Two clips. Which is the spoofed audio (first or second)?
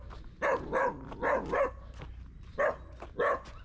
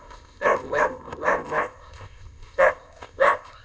second